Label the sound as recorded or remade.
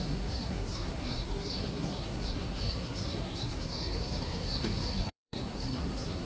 remade